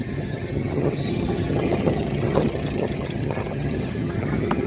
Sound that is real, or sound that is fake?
fake